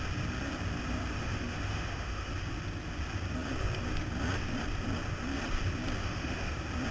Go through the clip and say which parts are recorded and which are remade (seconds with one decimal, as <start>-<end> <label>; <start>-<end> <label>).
0.0-1.2 recorded; 1.2-2.3 remade; 2.3-6.0 recorded; 6.0-6.5 remade; 6.5-6.9 recorded